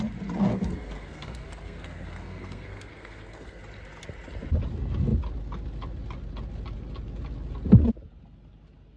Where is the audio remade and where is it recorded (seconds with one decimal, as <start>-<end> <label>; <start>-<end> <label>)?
0.0-0.5 recorded; 0.5-3.6 remade; 3.6-9.0 recorded